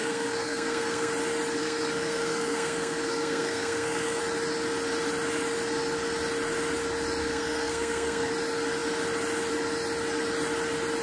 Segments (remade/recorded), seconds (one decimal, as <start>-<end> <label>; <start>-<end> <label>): 0.0-1.1 remade; 1.1-1.6 recorded; 1.6-4.2 remade; 4.2-7.2 recorded; 7.2-8.3 remade; 8.3-11.0 recorded